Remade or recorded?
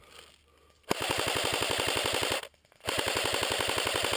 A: recorded